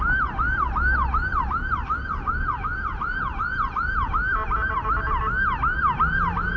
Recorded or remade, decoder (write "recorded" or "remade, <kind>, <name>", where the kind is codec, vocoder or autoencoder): recorded